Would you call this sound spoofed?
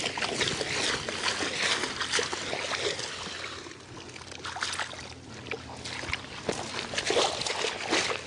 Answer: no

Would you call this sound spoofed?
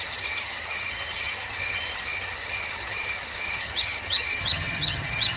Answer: yes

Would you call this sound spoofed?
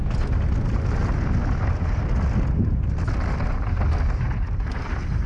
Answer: no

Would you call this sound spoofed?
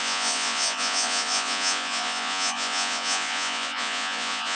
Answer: yes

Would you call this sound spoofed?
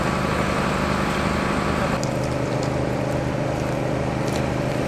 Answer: no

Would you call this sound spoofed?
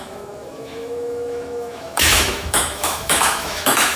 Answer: yes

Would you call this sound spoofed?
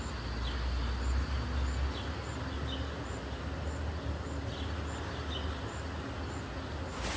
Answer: no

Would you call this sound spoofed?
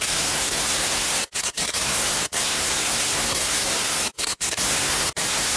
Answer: yes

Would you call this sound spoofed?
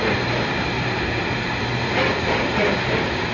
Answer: no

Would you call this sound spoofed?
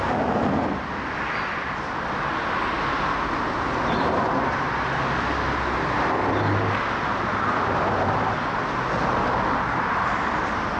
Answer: no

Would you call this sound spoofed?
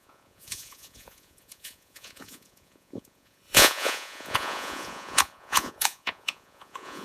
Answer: yes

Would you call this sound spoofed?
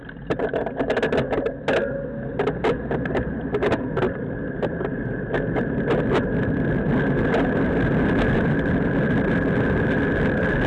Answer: no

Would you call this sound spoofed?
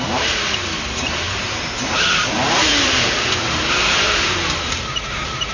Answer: yes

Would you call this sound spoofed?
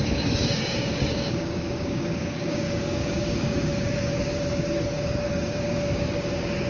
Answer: yes